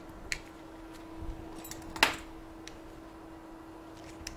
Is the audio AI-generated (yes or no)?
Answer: no